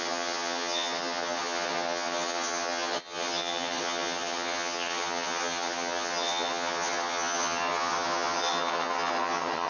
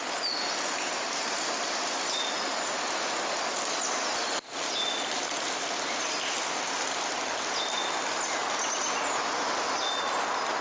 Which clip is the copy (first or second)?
first